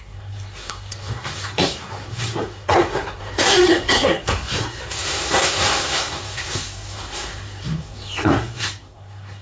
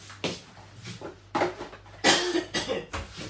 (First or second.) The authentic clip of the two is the second